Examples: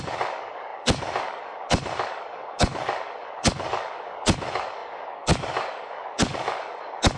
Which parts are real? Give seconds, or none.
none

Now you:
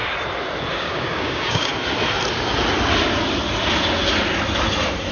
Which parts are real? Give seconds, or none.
0.0-0.7; 1.7-5.1

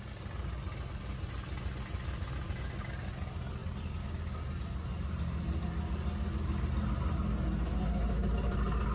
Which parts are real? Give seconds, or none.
0.0-8.9

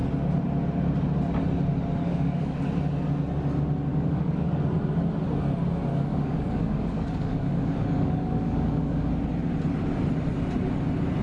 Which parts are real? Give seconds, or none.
0.0-2.0; 2.7-3.9; 4.6-5.9; 9.1-11.2

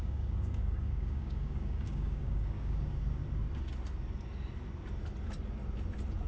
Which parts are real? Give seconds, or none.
3.2-6.3

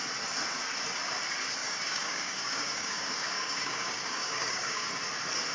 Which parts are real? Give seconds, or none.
0.0-1.6; 4.9-5.5